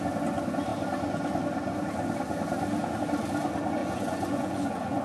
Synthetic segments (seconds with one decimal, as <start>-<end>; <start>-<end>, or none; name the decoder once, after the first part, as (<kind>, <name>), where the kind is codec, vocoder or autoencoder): 3.8-5.0 (vocoder, Vocos)